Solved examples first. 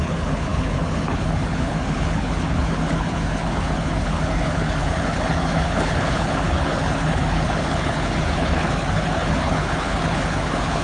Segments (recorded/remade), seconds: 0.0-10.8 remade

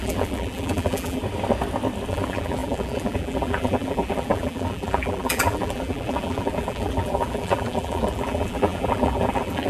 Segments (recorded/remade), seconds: 0.0-1.2 remade; 1.2-2.1 recorded; 2.1-9.7 remade

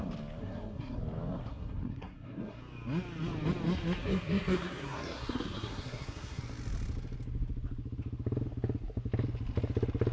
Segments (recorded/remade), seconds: 0.0-0.4 recorded; 0.4-1.0 remade; 1.0-1.5 recorded; 1.5-2.6 remade; 2.6-4.0 recorded; 4.0-6.4 remade; 6.4-10.1 recorded

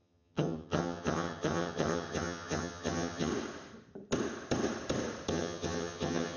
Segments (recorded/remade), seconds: 0.0-3.3 remade; 3.3-5.3 recorded; 5.3-6.4 remade

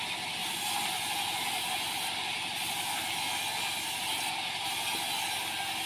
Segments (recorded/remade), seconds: 0.0-0.4 recorded; 0.4-3.9 remade; 3.9-5.9 recorded

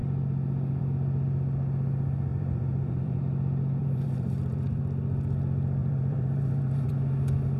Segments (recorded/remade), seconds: 0.0-2.3 recorded; 2.3-3.2 remade; 3.2-3.8 recorded; 3.8-4.8 remade; 4.8-5.8 recorded; 5.8-6.9 remade; 6.9-7.6 recorded